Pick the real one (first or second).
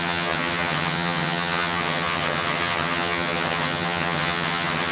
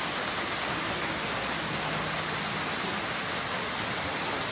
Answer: second